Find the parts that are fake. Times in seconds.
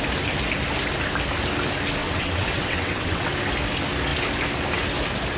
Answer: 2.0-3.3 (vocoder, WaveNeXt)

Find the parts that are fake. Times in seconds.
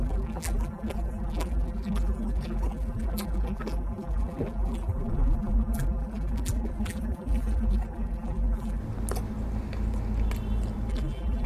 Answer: 0.0-8.8 (vocoder, BigVGAN v2); 10.9-11.5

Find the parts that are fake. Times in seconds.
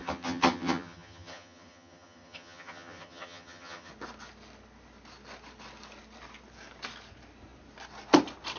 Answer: 0.0-3.9 (vocoder, HiFi-GAN)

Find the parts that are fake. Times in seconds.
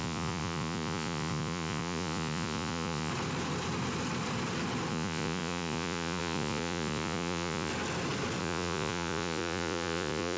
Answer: 0.0-3.1 (vocoder, Vocos); 4.9-7.7; 8.4-10.4